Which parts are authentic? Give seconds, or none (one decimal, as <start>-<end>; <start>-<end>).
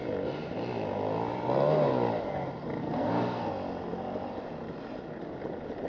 0.0-2.8; 3.5-5.9